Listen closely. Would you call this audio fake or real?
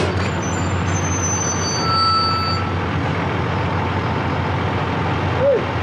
real